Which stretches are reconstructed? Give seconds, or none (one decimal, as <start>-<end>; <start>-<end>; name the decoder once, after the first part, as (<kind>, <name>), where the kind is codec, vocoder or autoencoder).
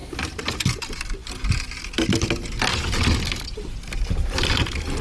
none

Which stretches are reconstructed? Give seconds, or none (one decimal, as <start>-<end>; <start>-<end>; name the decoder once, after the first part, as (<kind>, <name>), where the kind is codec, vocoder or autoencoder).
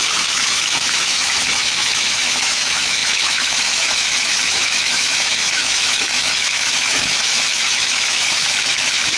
0.0-9.2 (autoencoder, DAC-VAE)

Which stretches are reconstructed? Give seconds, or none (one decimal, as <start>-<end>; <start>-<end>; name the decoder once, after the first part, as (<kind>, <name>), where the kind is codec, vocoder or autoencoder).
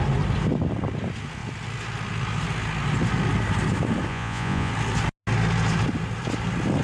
4.1-4.7 (vocoder, Vocos)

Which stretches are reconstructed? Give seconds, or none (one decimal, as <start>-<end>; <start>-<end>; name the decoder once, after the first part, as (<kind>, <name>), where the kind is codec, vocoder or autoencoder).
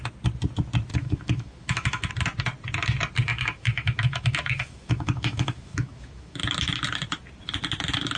0.9-2.1 (autoencoder, DAC-VAE); 3.3-6.4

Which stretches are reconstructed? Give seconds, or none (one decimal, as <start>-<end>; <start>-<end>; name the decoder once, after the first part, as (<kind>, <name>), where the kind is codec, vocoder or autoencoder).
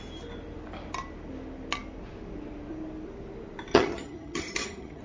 3.7-5.0 (vocoder, HiFi-GAN)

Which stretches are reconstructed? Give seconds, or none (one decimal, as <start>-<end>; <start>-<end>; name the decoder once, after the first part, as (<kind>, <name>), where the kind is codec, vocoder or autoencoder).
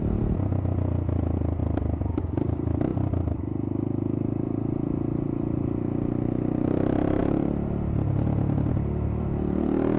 1.6-2.2 (vocoder, BigVGAN v2); 2.9-3.4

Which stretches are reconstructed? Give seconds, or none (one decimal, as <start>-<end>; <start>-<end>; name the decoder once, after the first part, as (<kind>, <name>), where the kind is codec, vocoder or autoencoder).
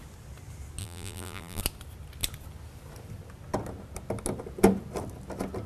0.8-1.6 (vocoder, BigVGAN v2)